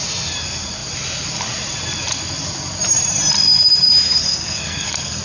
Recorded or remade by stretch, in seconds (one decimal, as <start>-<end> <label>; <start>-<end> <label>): 0.0-4.3 recorded; 4.3-5.2 remade